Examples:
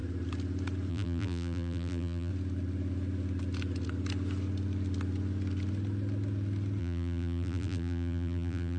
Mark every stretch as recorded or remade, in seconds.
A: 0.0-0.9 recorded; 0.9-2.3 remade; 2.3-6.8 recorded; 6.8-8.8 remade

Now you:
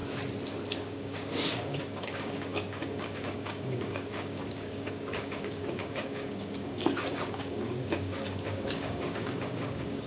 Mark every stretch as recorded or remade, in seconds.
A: 0.0-0.8 recorded; 0.8-10.1 remade

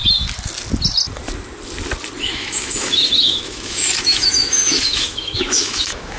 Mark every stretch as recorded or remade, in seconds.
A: 0.0-2.2 recorded; 2.2-6.2 remade

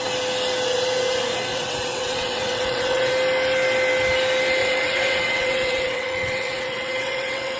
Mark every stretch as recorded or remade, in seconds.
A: 0.0-1.5 recorded; 1.5-3.1 remade; 3.1-4.6 recorded; 4.6-7.6 remade